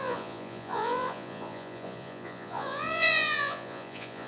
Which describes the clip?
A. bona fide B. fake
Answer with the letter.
B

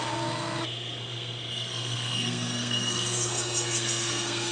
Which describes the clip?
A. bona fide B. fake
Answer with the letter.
B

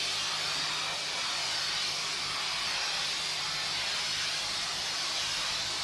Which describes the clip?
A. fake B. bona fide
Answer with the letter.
B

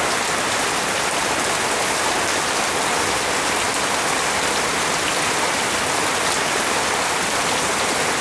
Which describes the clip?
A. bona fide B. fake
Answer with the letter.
A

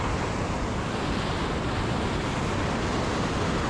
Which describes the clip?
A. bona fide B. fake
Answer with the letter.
A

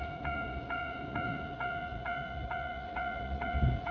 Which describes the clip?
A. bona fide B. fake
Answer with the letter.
B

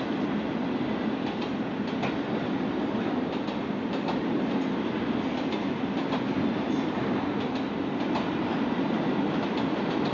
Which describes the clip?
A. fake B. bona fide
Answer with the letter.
B